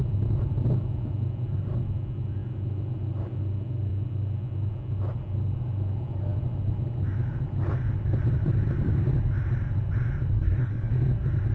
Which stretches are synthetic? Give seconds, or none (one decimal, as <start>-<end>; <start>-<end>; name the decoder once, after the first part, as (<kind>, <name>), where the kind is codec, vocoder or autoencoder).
10.3-10.9 (codec, SNAC)